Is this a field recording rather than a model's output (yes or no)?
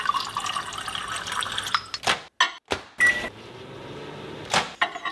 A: yes